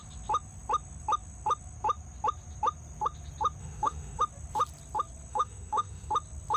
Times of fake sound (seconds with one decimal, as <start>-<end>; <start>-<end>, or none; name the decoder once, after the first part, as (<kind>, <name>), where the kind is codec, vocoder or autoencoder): 3.6-4.2 (autoencoder, DAC-VAE); 5.3-6.1